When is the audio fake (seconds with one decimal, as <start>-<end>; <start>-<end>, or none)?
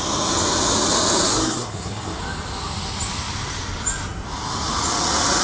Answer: 1.3-2.2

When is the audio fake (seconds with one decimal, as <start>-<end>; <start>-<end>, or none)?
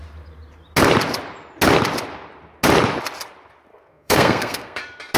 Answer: 3.7-4.8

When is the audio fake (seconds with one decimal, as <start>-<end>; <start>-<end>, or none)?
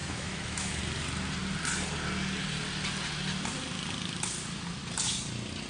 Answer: 0.0-0.8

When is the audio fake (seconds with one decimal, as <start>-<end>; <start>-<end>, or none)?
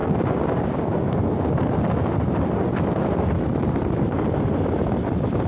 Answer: 0.0-1.2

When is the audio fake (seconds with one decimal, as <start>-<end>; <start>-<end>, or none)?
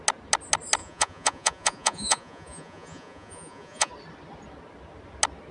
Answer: 0.8-3.9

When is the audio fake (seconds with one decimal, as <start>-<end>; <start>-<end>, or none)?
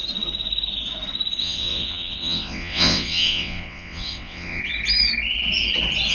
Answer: 1.4-4.6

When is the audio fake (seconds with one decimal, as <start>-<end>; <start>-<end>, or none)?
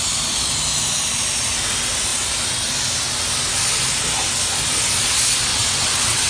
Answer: 5.5-6.3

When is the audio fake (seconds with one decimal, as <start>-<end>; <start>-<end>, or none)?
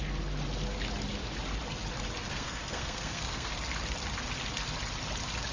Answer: 2.3-3.5